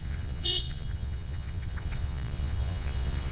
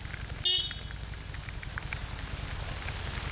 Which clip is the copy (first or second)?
first